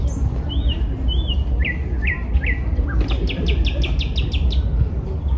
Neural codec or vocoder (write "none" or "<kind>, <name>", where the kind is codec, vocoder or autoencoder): none